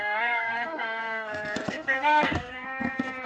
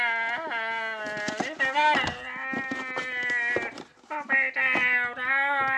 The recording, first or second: second